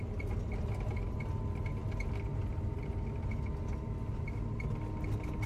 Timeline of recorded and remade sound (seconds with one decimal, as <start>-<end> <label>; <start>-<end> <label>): 0.0-5.5 recorded